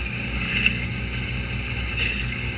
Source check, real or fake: real